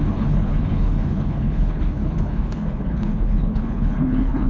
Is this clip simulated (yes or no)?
yes